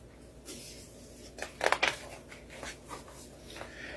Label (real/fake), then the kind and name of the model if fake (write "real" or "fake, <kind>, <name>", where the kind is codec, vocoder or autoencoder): real